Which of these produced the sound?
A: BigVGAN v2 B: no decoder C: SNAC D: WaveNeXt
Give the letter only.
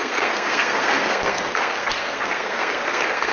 C